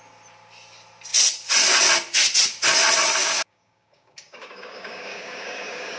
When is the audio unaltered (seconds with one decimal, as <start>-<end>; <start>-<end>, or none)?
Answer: 0.0-3.2